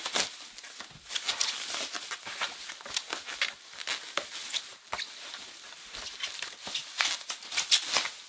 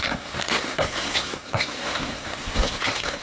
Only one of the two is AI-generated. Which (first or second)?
second